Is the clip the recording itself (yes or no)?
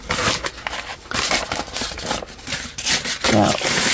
yes